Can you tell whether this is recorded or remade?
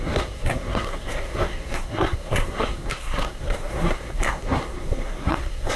remade